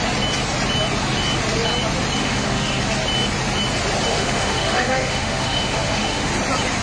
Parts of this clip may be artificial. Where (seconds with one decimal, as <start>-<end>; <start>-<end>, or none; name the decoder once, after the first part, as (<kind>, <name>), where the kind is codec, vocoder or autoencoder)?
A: 2.2-2.8 (autoencoder, DAC-VAE); 4.1-6.3

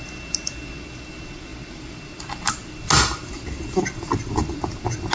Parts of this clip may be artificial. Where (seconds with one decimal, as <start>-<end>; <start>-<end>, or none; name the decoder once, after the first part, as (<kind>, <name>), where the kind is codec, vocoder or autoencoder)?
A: none

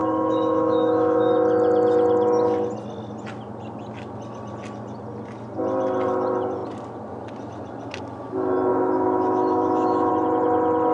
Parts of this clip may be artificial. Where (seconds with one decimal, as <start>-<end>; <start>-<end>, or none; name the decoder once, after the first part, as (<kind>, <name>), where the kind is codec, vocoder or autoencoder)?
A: 0.0-1.3 (autoencoder, DAC-VAE); 8.7-10.1

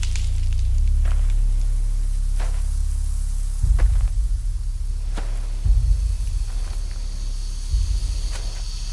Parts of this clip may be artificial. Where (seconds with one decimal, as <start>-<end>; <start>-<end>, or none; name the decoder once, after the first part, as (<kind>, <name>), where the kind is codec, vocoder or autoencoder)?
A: none

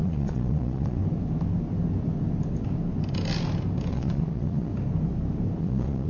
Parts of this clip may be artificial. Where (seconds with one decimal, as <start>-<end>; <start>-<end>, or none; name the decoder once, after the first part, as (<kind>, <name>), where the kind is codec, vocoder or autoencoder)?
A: 0.0-1.0 (vocoder, Vocos); 3.9-4.7; 5.6-6.1

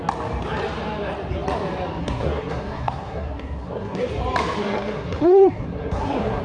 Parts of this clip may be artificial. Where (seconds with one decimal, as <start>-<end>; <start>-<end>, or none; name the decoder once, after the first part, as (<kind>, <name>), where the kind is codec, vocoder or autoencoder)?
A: 2.0-4.1 (codec, SNAC); 4.6-6.4

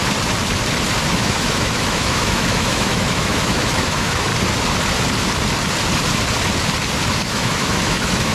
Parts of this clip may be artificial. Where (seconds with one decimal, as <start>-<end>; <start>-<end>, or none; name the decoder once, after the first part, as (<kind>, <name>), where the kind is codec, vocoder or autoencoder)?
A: 1.1-4.3 (autoencoder, DAC-VAE); 7.1-8.3